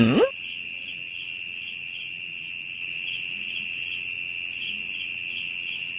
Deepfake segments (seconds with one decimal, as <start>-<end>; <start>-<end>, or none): none